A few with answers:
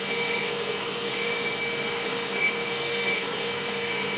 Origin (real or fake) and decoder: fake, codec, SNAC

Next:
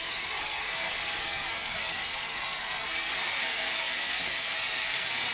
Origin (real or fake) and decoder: fake, codec, SNAC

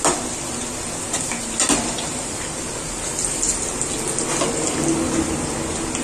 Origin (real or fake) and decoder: real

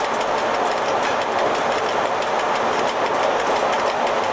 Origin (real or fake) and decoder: real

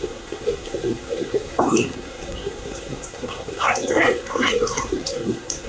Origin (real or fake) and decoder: fake, codec, SNAC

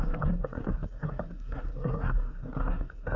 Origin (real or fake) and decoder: fake, codec, SNAC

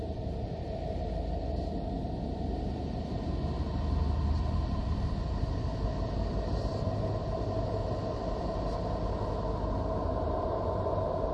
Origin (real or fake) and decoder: real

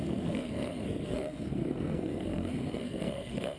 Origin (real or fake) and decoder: fake, codec, SNAC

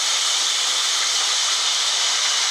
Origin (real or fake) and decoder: real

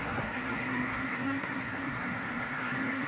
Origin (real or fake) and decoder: fake, codec, SNAC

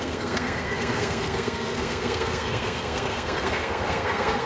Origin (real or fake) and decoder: fake, codec, SNAC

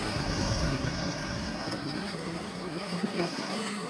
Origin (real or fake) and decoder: fake, codec, SNAC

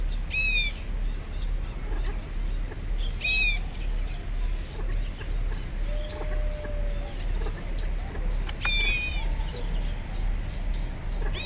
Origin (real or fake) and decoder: real